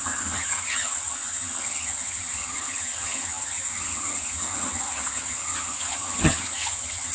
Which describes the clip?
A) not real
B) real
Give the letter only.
A